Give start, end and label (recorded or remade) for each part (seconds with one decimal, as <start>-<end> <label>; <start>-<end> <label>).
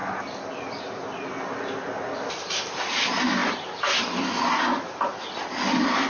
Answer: 0.0-6.1 recorded